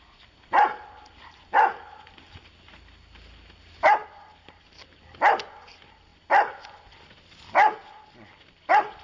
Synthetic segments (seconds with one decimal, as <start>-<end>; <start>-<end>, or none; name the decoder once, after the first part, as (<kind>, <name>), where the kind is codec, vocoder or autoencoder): none